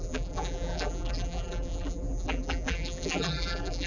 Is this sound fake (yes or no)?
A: yes